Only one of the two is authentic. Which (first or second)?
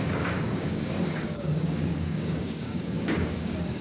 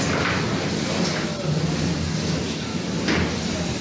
second